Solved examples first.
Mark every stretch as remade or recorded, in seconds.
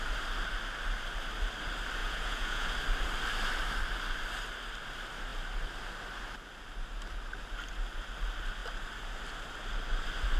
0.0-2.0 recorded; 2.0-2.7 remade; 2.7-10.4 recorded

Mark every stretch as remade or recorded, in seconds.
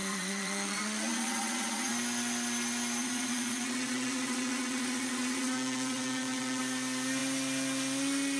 0.0-1.9 remade; 1.9-3.0 recorded; 3.0-6.6 remade; 6.6-8.4 recorded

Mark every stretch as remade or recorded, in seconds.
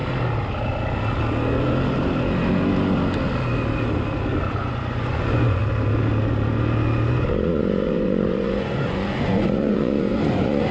0.0-4.4 recorded; 4.4-5.6 remade; 5.6-7.1 recorded; 7.1-10.7 remade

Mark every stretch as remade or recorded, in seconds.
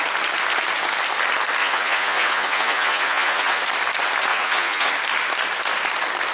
0.0-1.6 recorded; 1.6-3.6 remade; 3.6-4.3 recorded; 4.3-4.9 remade; 4.9-6.3 recorded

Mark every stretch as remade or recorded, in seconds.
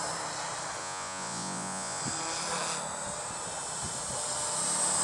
0.0-0.8 recorded; 0.8-2.0 remade; 2.0-5.0 recorded